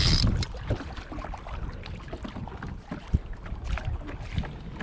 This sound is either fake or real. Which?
real